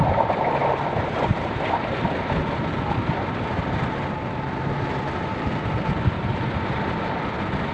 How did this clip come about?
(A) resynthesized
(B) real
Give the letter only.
B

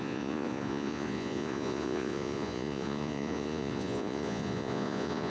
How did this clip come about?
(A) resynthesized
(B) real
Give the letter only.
A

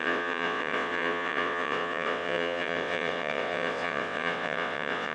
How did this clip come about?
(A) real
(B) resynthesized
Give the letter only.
B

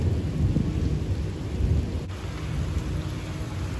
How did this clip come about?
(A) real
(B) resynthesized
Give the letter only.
A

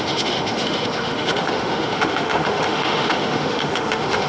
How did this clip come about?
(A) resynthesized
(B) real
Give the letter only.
A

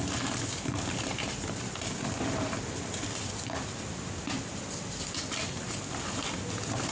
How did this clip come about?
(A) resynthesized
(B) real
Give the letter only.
B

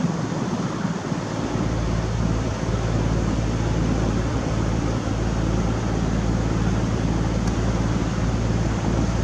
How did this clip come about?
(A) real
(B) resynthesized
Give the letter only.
B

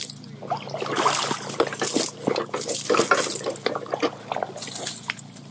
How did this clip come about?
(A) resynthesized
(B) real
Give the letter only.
B